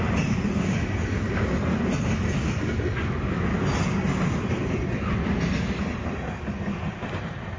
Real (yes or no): yes